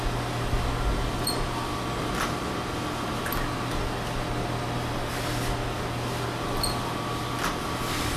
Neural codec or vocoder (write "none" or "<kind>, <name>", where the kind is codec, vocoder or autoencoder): none